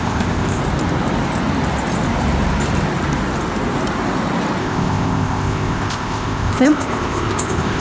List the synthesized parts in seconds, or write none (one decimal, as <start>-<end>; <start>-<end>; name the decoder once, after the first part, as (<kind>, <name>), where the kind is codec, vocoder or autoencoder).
0.0-0.6 (codec, ZipCodec); 4.6-7.8